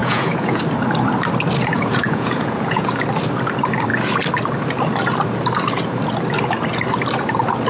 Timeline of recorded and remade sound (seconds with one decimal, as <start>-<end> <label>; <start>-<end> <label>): 0.0-0.6 remade; 0.6-1.7 recorded; 1.7-2.9 remade; 2.9-7.7 recorded